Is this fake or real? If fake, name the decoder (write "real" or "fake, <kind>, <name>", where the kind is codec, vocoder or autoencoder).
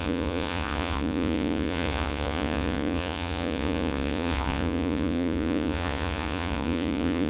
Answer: fake, vocoder, Vocos